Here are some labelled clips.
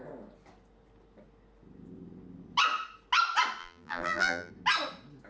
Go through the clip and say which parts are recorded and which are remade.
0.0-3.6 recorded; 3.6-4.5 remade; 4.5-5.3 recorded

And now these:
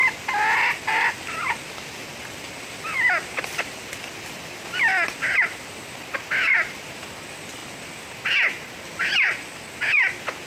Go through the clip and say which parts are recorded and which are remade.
0.0-10.5 recorded

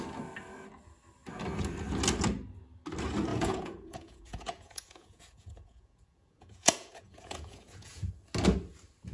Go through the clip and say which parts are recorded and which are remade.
0.0-3.3 recorded; 3.3-8.1 remade; 8.1-9.1 recorded

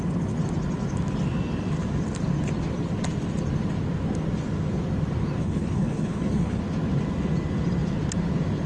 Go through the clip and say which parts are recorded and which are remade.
0.0-5.4 recorded; 5.4-6.6 remade; 6.6-8.7 recorded